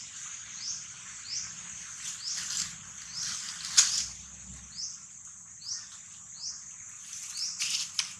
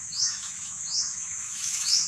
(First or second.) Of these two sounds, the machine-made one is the second